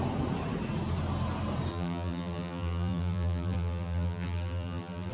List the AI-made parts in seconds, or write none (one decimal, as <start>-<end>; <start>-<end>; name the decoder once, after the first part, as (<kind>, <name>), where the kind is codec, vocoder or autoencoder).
1.7-5.1 (vocoder, BigVGAN v2)